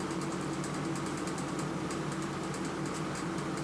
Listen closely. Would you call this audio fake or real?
real